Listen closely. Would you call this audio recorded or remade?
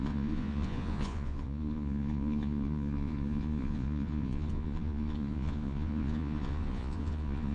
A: remade